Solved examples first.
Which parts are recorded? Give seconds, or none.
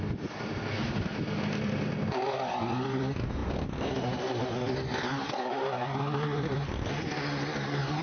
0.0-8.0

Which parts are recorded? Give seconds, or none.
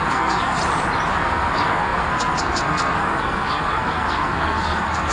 0.6-1.1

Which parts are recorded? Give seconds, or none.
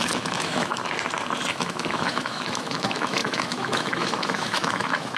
0.8-1.5